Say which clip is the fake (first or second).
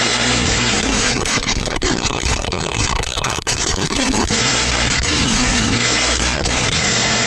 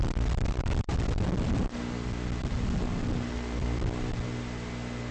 first